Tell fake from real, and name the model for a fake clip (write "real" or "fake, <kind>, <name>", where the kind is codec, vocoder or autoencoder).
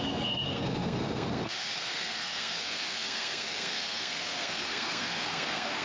fake, codec, SNAC